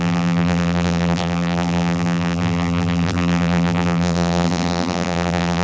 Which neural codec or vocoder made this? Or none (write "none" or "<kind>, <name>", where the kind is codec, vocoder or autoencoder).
vocoder, BigVGAN v2